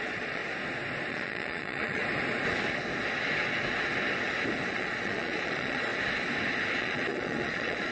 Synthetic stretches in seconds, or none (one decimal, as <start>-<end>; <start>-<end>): 0.0-0.4; 1.1-2.0; 4.7-5.9; 6.7-7.9